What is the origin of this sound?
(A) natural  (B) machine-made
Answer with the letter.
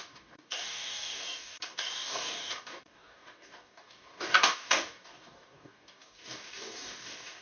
B